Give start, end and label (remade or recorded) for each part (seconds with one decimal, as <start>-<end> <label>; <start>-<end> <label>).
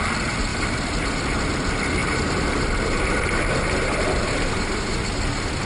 0.0-0.5 recorded; 0.5-1.2 remade; 1.2-2.0 recorded; 2.0-5.7 remade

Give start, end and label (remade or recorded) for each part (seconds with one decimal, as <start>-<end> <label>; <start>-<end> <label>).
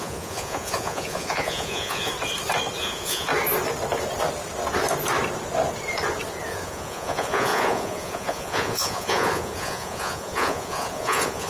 0.0-2.1 remade; 2.1-2.8 recorded; 2.8-3.3 remade; 3.3-6.5 recorded; 6.5-11.5 remade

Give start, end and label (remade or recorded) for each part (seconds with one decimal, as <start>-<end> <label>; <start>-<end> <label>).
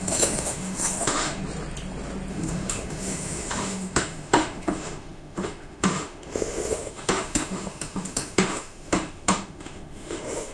0.0-1.4 remade; 1.4-2.3 recorded; 2.3-10.5 remade